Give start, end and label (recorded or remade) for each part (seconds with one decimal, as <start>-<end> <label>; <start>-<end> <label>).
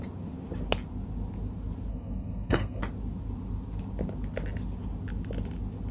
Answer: 0.0-1.9 recorded; 1.9-2.8 remade; 2.8-5.9 recorded